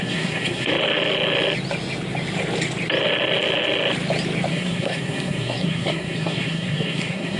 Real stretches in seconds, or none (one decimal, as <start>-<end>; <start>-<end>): 0.7-4.5